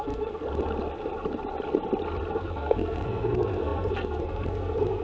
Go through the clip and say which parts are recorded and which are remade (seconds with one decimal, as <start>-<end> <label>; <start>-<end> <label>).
0.0-0.4 remade; 0.4-2.3 recorded; 2.3-5.0 remade